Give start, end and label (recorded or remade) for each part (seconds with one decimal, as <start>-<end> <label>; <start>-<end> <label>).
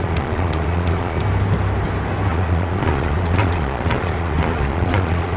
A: 0.0-1.2 remade; 1.2-2.3 recorded; 2.3-5.4 remade